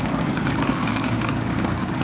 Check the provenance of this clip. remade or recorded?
remade